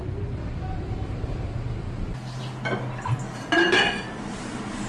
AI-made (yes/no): no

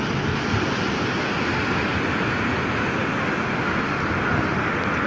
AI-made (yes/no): no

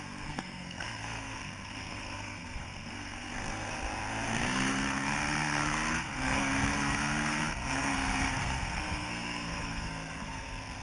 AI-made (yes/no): yes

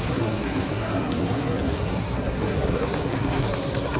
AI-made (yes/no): yes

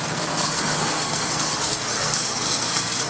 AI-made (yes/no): yes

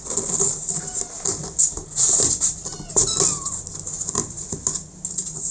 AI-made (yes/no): no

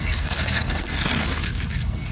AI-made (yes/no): yes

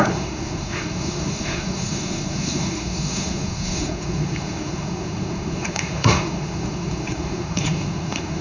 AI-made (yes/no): yes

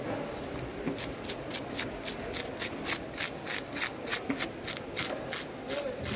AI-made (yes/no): no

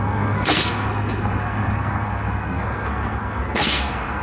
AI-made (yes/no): yes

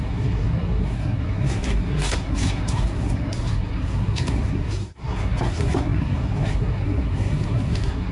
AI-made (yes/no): yes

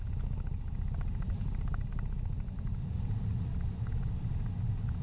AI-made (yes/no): no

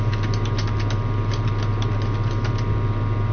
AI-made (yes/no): no